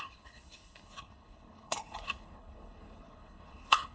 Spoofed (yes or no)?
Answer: yes